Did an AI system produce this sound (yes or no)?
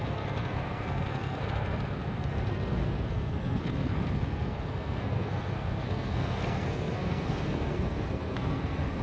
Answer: yes